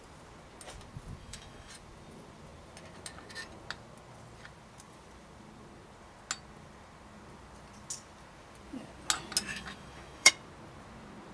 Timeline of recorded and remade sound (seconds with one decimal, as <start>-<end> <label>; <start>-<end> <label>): 0.0-1.2 recorded; 1.2-1.7 remade; 1.7-9.5 recorded; 9.5-10.3 remade; 10.3-11.3 recorded